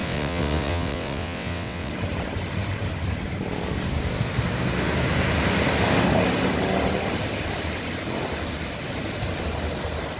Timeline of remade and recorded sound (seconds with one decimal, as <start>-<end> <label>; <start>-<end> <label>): 0.0-1.9 remade; 1.9-10.2 recorded